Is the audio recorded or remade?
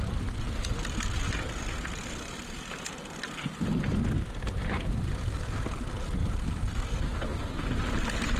recorded